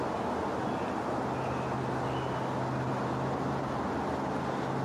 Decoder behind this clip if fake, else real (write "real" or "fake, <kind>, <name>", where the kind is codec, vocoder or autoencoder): real